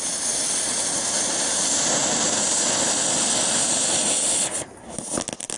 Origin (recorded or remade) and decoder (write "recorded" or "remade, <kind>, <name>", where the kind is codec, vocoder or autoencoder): recorded